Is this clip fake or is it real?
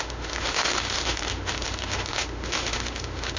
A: fake